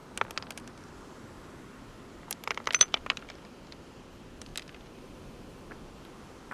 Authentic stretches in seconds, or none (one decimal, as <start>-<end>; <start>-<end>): 0.0-0.8; 4.5-6.1